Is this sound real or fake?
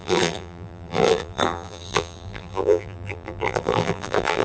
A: fake